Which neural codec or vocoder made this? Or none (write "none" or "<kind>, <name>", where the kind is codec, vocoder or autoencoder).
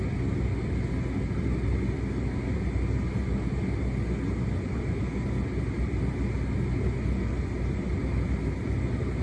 none